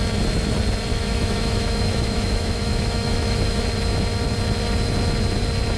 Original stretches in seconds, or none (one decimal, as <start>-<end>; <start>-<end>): 0.0-0.9; 3.6-5.8